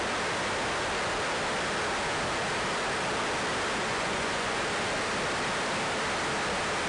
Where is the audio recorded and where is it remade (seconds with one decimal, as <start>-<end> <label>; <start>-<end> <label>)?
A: 0.0-3.9 recorded; 3.9-4.6 remade; 4.6-6.9 recorded